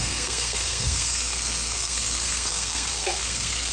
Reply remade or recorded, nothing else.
remade